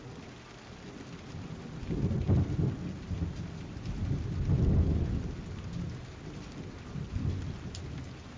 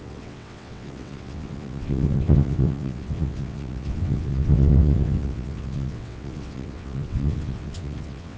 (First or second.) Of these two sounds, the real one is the first